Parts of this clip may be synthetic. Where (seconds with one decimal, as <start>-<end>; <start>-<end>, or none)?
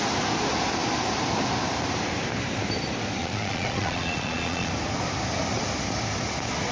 3.2-4.7